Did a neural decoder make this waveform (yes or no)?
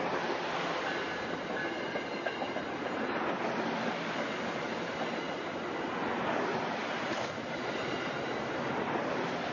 no